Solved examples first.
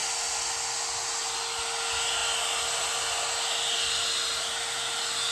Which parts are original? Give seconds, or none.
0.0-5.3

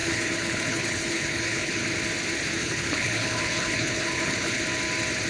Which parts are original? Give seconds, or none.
1.7-2.6; 4.6-5.3

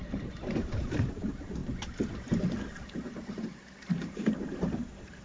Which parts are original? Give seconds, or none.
1.6-4.0

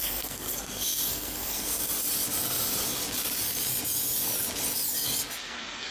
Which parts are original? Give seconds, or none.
1.9-5.4

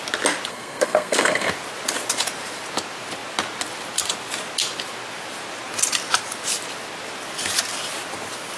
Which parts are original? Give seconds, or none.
0.0-0.5; 1.5-8.6

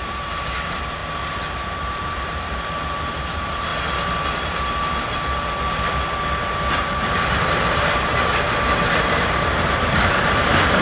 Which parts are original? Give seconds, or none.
1.0-1.6; 3.7-6.7; 8.1-8.9

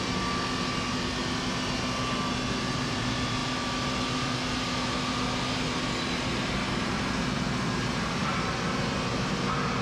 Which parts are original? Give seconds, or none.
0.0-9.8